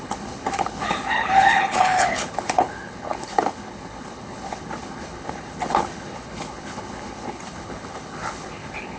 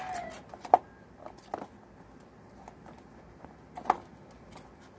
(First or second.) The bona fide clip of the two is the second